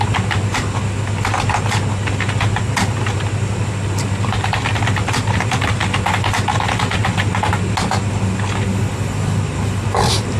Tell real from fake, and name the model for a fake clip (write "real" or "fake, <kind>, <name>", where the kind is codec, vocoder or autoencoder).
real